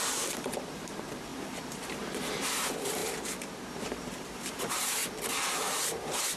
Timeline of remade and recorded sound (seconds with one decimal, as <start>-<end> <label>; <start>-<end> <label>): 0.0-5.0 remade; 5.0-5.7 recorded; 5.7-6.4 remade